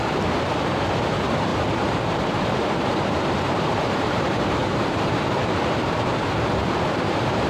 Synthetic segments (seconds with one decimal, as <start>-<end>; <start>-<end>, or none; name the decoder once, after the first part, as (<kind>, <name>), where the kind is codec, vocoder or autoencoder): 0.0-7.5 (vocoder, BigVGAN v2)